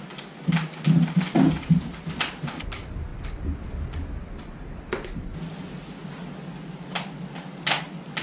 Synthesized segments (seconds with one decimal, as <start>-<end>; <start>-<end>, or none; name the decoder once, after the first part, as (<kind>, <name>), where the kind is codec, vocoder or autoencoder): none